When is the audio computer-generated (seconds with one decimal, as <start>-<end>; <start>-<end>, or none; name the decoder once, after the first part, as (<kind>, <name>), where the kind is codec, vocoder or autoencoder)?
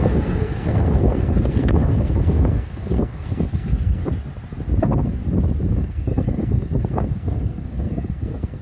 0.0-4.0 (codec, SNAC); 4.8-5.2; 5.7-8.6